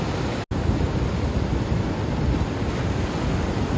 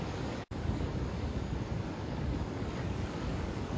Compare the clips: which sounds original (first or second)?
first